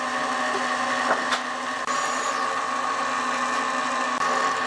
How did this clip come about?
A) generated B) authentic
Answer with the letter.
B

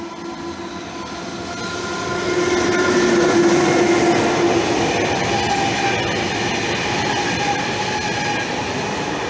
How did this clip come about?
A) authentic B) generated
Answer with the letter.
A